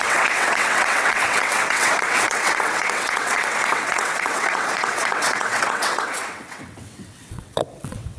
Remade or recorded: remade